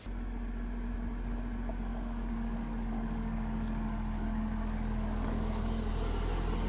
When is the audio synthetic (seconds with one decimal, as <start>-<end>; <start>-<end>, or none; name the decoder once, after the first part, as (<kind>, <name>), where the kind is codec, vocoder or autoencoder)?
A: 1.9-5.9 (codec, DAC)